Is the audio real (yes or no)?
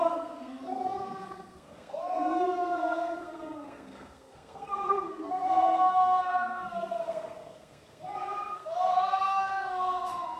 no